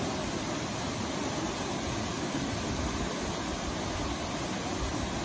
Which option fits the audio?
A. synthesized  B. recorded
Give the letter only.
B